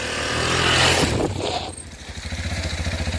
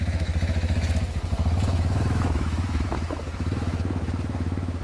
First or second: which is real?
first